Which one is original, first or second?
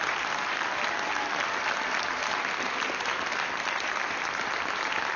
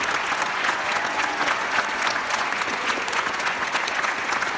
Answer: first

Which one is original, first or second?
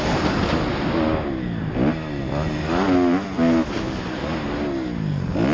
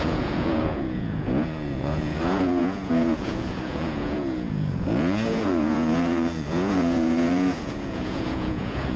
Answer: first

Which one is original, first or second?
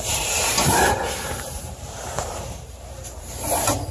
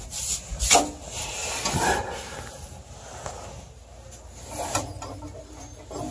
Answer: second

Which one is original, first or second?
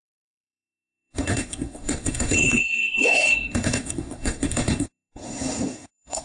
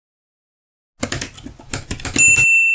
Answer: second